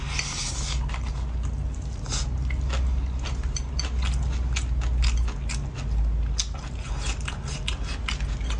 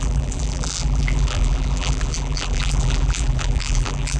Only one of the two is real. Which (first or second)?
first